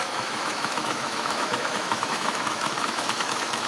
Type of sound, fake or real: fake